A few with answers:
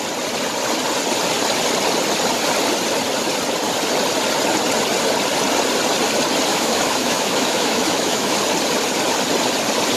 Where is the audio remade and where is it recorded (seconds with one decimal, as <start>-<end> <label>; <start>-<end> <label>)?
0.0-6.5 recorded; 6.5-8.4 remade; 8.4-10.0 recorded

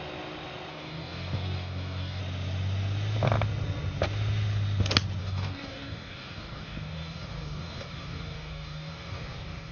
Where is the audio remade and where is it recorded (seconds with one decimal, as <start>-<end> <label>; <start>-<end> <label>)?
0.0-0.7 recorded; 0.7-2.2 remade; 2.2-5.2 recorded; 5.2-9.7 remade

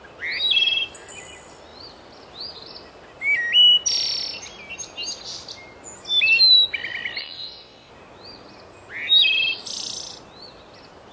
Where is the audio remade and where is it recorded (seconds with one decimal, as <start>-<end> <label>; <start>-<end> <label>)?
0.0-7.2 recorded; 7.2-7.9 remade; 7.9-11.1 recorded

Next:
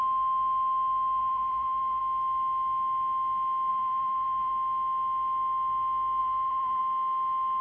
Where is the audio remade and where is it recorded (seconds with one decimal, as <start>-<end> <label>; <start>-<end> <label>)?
0.0-1.2 recorded; 1.2-2.0 remade; 2.0-3.7 recorded; 3.7-4.5 remade; 4.5-6.2 recorded; 6.2-6.8 remade; 6.8-7.6 recorded